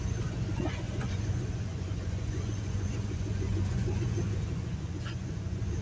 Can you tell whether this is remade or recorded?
remade